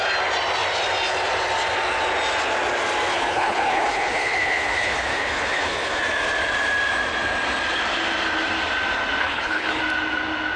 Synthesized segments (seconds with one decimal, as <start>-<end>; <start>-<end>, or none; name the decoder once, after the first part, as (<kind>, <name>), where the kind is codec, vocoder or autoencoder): 3.1-6.0 (codec, HILCodec); 9.2-9.8